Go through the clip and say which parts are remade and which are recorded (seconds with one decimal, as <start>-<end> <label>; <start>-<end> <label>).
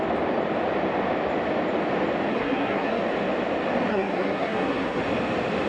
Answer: 0.0-2.3 recorded; 2.3-3.0 remade; 3.0-3.9 recorded; 3.9-5.0 remade; 5.0-5.7 recorded